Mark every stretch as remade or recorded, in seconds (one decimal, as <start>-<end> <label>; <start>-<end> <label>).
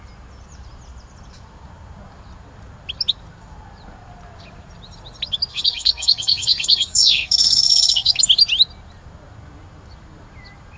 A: 0.0-5.5 recorded; 5.5-8.2 remade; 8.2-10.8 recorded